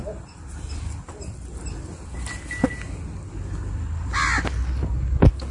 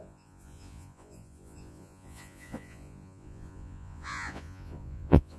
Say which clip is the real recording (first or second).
first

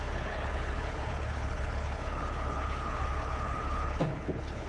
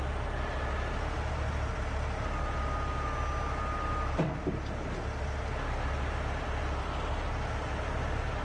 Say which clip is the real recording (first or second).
second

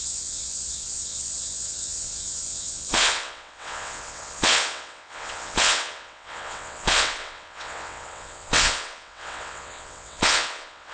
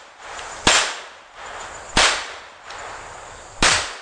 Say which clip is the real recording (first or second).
second